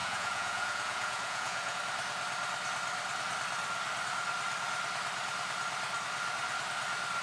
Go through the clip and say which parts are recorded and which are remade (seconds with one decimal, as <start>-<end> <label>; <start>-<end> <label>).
0.0-1.8 remade; 1.8-7.2 recorded